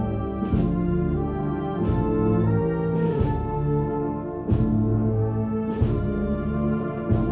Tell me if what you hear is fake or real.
real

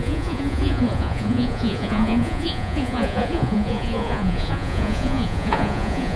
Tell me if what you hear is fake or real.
fake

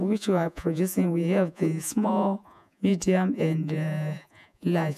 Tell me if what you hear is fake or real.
fake